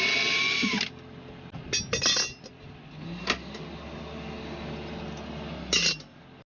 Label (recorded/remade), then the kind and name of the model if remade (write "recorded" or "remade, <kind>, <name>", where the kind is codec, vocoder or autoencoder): recorded